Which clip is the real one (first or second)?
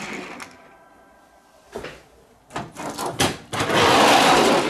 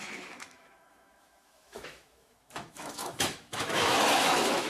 first